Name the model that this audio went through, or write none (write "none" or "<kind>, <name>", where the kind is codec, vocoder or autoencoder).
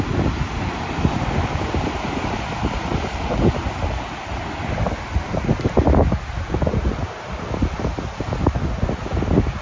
none